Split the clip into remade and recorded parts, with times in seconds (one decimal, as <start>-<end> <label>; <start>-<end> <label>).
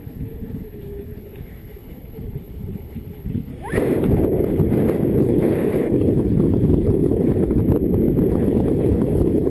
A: 0.0-3.5 remade; 3.5-5.2 recorded; 5.2-7.6 remade; 7.6-8.3 recorded; 8.3-9.5 remade